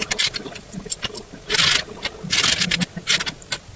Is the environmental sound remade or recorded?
recorded